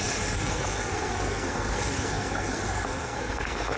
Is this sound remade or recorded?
remade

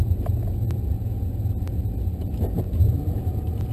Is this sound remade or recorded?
recorded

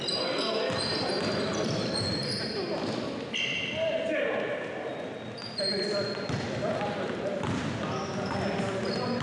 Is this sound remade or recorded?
recorded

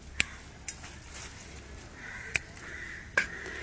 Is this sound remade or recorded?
recorded